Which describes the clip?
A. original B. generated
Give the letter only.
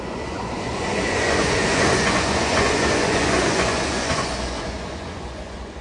B